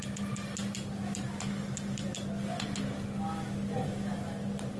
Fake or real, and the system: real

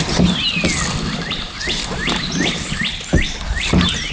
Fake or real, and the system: real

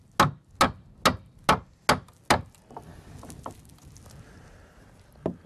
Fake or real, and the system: real